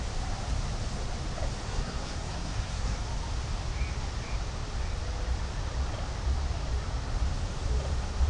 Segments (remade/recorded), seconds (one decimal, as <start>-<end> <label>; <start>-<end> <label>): 0.0-1.7 recorded; 1.7-3.0 remade; 3.0-8.3 recorded